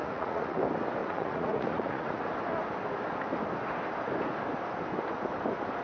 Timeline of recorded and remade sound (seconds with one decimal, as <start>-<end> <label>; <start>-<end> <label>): 0.0-0.6 remade; 0.6-1.0 recorded; 1.0-2.2 remade; 2.2-5.8 recorded